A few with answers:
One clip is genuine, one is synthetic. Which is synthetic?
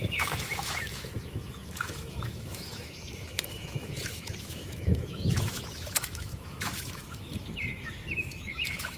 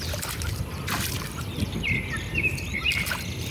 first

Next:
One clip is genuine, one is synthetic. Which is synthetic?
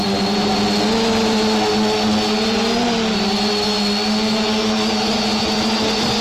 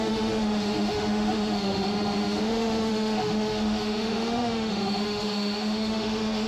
second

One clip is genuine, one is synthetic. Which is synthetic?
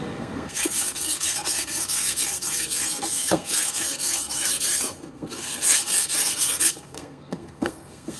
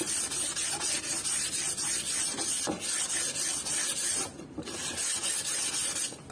first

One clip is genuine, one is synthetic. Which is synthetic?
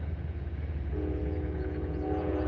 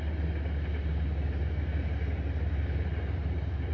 first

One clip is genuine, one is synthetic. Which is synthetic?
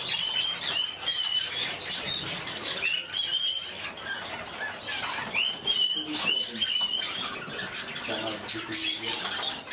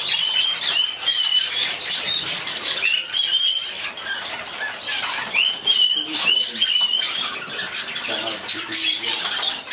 second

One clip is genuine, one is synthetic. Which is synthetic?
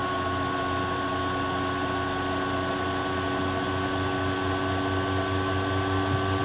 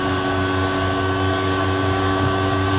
second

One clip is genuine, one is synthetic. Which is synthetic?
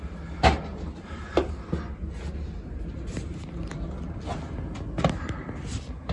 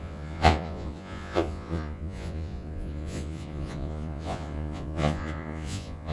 second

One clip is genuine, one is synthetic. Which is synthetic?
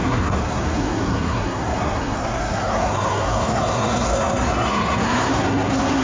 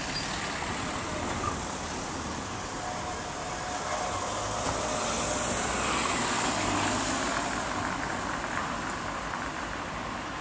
first